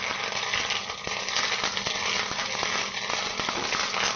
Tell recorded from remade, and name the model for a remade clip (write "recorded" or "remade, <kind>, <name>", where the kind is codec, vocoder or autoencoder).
recorded